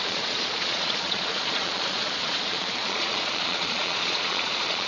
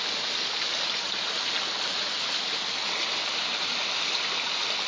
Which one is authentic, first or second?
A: second